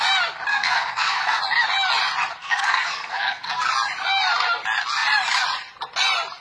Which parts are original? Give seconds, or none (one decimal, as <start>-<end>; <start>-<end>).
0.0-0.5; 1.4-2.4; 3.6-6.4